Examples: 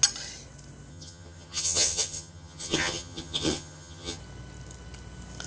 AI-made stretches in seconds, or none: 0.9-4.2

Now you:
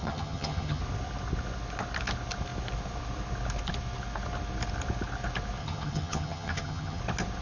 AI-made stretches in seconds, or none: 0.0-0.8; 5.6-7.0